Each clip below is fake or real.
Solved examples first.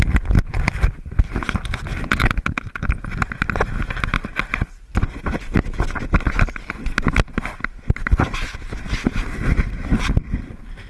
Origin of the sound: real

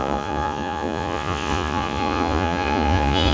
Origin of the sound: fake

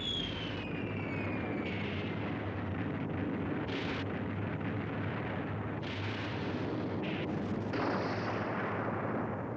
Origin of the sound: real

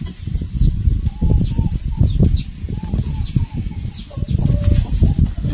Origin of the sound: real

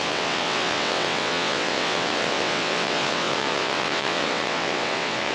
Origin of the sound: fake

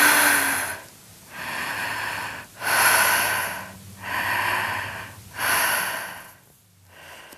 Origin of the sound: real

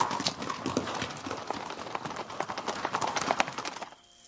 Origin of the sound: real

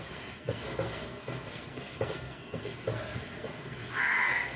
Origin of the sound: fake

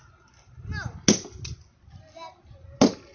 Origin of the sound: real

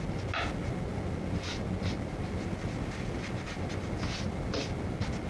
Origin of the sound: real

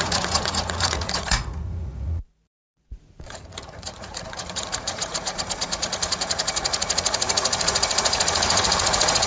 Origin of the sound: fake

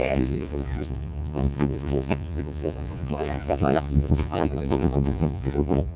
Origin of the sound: fake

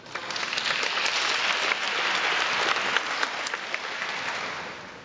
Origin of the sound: real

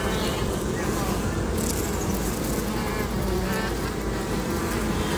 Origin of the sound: real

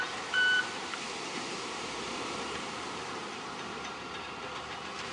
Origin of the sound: fake